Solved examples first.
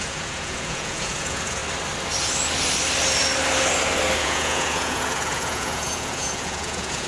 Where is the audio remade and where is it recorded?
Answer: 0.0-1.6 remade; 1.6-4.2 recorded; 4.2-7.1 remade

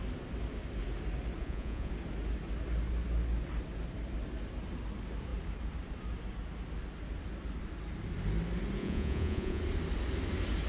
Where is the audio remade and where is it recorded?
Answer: 0.0-1.4 recorded; 1.4-1.9 remade; 1.9-8.8 recorded; 8.8-9.6 remade; 9.6-10.7 recorded

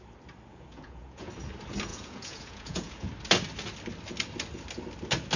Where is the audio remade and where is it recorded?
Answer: 0.0-0.5 recorded; 0.5-1.3 remade; 1.3-1.9 recorded; 1.9-3.1 remade; 3.1-5.4 recorded

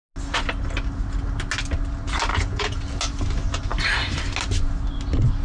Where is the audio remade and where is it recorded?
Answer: 0.0-2.3 recorded; 2.3-2.8 remade; 2.8-5.4 recorded